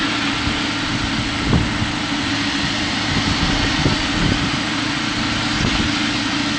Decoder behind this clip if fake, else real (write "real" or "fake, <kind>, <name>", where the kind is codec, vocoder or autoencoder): real